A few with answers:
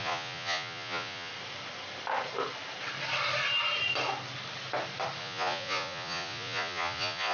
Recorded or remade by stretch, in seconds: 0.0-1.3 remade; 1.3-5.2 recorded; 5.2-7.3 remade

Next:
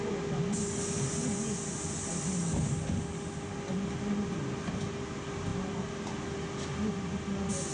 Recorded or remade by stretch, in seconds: 0.0-7.7 recorded

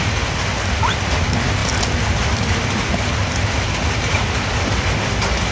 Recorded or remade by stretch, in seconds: 0.0-5.5 recorded